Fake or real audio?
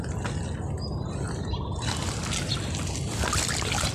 real